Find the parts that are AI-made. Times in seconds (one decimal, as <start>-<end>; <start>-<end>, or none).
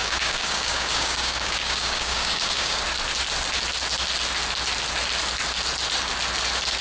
0.0-2.8